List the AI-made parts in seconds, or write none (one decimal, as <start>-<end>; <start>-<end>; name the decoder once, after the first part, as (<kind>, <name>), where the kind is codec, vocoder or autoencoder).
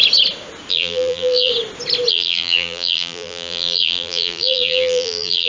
0.7-1.5 (vocoder, BigVGAN v2); 2.1-5.5